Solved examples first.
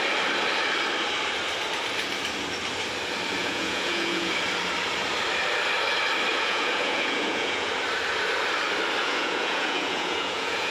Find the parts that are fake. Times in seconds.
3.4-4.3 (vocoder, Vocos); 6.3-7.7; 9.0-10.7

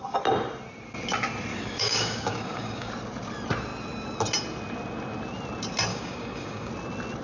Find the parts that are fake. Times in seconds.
1.5-2.9 (codec, DAC); 5.9-6.7

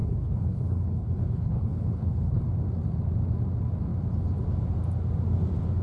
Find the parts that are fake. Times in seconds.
0.0-2.4 (codec, HILCodec)